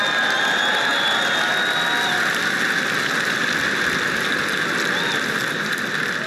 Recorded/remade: recorded